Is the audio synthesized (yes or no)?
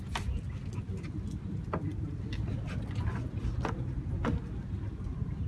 no